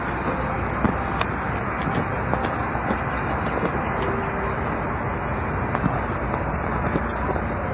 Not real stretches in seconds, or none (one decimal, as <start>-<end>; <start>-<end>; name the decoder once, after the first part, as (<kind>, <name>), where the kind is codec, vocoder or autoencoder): none